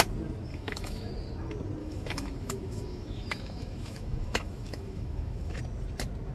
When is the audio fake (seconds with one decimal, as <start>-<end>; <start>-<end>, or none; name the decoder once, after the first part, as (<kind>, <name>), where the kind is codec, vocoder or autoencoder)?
0.5-1.1 (autoencoder, DAC-VAE); 1.8-5.6